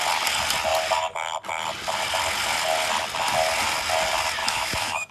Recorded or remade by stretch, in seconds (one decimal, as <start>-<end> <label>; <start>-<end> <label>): 0.0-4.4 recorded; 4.4-5.1 remade